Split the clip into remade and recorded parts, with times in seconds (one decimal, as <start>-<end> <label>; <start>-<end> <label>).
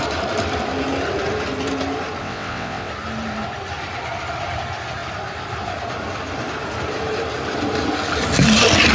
0.0-2.2 recorded; 2.2-2.9 remade; 2.9-8.9 recorded